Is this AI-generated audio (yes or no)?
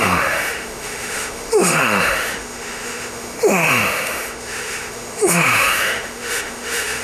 yes